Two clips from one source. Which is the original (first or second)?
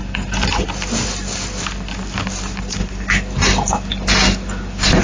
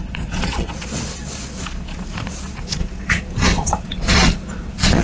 first